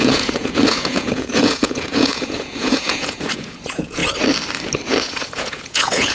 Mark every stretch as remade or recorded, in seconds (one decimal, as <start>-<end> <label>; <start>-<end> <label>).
0.0-4.0 remade; 4.0-5.0 recorded; 5.0-6.1 remade